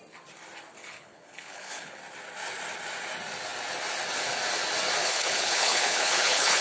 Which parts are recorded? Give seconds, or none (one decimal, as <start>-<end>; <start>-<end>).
0.0-0.8; 2.0-5.0